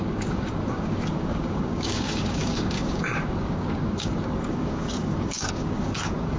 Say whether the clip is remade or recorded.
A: remade